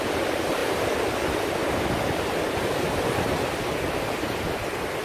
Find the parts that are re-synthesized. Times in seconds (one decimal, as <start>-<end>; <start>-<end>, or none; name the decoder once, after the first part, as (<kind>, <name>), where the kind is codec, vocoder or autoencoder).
none